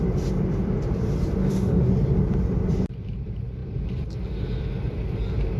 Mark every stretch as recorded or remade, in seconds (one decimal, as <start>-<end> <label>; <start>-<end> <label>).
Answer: 0.0-1.4 recorded; 1.4-1.9 remade; 1.9-5.6 recorded